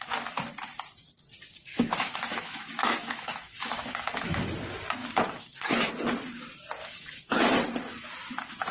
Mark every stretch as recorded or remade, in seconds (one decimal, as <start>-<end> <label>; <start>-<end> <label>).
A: 0.0-1.7 recorded; 1.7-4.4 remade; 4.4-5.0 recorded; 5.0-5.9 remade; 5.9-6.8 recorded; 6.8-7.4 remade; 7.4-8.7 recorded